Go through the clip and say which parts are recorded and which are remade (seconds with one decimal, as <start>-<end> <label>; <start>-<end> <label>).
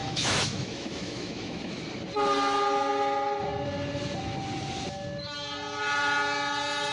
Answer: 0.0-1.8 remade; 1.8-6.9 recorded